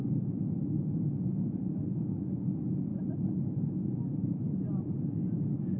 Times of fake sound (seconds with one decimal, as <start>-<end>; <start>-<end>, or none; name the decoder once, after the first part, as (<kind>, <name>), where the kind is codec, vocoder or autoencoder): 0.0-2.9 (vocoder, Vocos); 3.9-5.8